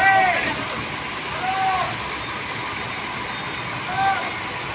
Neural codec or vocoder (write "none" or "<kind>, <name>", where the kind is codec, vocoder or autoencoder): none